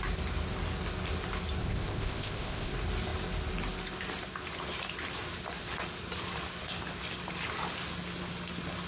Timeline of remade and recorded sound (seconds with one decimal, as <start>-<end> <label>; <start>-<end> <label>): 0.0-1.6 recorded; 1.6-2.7 remade; 2.7-8.9 recorded